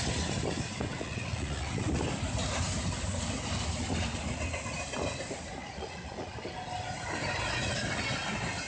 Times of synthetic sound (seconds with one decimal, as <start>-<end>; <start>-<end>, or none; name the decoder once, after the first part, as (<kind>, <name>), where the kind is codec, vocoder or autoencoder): 0.9-2.0 (vocoder, Vocos); 5.6-6.3